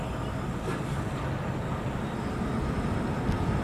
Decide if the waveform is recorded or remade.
recorded